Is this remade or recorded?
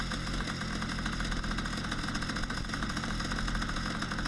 recorded